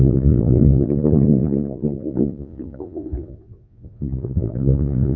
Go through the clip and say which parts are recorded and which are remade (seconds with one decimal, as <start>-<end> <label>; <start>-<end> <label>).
0.0-5.2 remade